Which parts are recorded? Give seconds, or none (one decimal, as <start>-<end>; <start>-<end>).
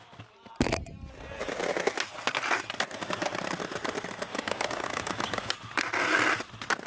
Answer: 0.0-4.3; 5.5-6.9